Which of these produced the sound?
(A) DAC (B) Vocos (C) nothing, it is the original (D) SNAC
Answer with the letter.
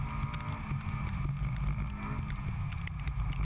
C